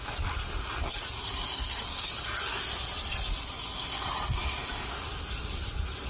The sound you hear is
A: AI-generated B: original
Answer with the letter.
B